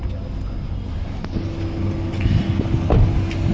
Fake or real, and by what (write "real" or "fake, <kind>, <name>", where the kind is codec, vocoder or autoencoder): real